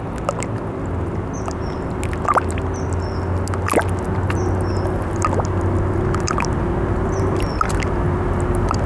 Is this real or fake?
real